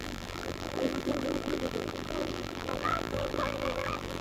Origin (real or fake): fake